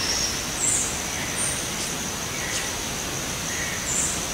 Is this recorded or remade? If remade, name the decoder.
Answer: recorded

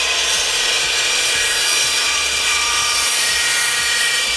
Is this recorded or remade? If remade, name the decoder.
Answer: remade, vocoder, Vocos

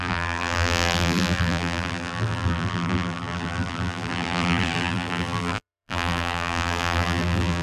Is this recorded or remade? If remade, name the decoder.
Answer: remade, vocoder, BigVGAN v2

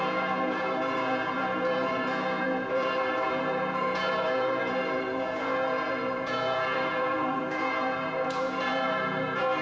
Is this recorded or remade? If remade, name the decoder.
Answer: remade, vocoder, Vocos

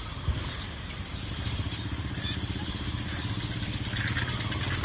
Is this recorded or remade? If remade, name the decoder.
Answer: recorded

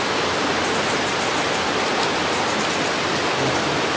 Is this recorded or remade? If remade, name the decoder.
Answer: remade, vocoder, BigVGAN v2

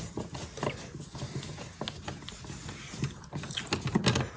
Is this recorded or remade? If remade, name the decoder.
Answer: recorded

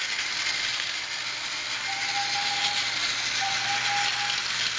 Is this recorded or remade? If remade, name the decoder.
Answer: recorded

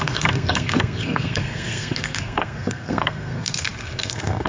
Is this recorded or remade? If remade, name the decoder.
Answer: remade, codec, SNAC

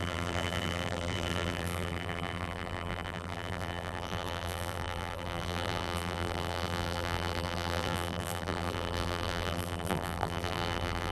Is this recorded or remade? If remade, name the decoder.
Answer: remade, vocoder, BigVGAN v2